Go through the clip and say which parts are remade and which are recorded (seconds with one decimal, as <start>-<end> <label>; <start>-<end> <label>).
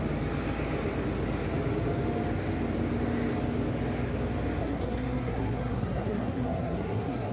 0.0-4.6 recorded; 4.6-7.3 remade